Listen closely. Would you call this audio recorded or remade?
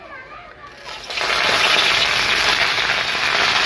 recorded